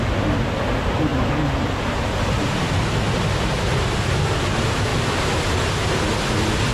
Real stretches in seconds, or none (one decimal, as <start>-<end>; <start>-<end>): 0.0-6.7